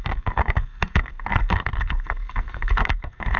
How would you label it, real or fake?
fake